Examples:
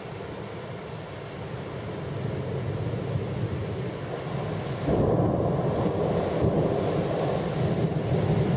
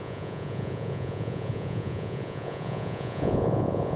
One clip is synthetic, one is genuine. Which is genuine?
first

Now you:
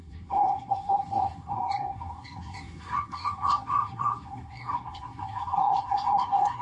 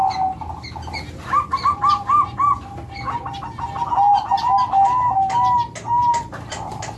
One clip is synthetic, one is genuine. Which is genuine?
second